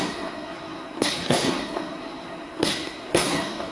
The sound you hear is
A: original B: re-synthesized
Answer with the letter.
B